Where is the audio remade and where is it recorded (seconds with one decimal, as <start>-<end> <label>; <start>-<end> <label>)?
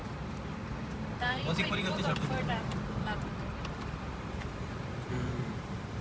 0.0-2.7 remade; 2.7-3.7 recorded; 3.7-6.0 remade